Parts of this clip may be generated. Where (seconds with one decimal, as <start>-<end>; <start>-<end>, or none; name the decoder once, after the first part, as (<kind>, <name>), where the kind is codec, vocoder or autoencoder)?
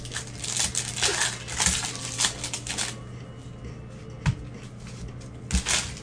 none